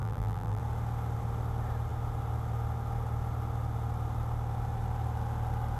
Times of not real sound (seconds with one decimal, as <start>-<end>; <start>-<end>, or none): 0.0-0.6